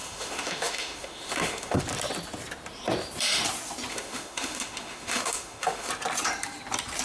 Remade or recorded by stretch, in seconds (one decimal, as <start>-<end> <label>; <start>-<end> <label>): 0.0-1.8 remade; 1.8-3.9 recorded; 3.9-5.9 remade; 5.9-7.0 recorded